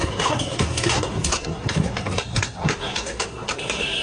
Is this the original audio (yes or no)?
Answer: no